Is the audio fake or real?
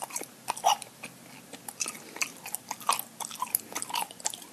real